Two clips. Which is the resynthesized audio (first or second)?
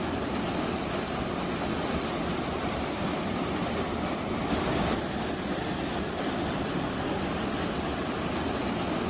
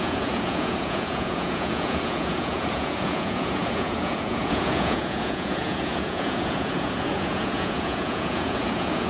second